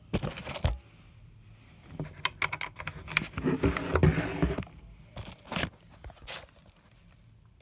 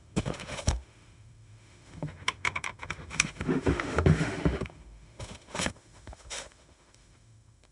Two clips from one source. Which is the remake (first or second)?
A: second